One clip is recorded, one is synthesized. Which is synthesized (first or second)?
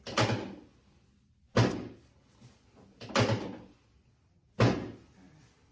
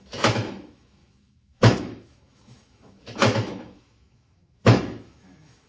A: second